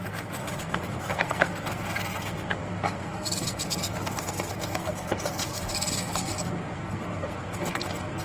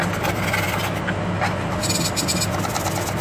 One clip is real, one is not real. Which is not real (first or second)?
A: first